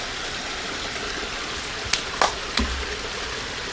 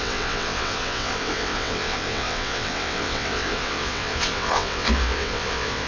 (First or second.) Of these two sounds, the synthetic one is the second